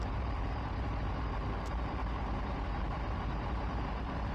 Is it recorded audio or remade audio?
remade